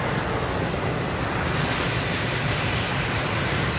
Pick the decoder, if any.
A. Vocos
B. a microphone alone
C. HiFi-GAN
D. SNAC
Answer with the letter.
B